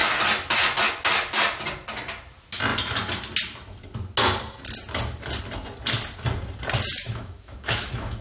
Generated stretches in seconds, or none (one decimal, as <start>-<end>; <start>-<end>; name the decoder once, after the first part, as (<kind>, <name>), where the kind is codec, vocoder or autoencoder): 7.0-8.2 (autoencoder, DAC-VAE)